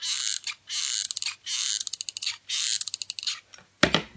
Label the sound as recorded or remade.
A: recorded